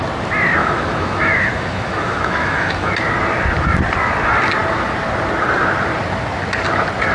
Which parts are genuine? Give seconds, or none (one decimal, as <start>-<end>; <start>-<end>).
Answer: 0.0-0.6; 2.9-7.1